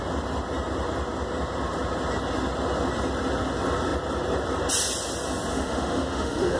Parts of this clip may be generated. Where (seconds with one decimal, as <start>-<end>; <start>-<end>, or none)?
5.5-6.6